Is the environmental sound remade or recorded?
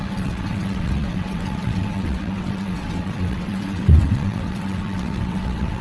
remade